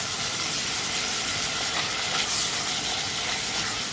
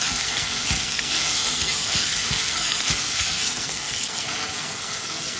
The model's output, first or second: second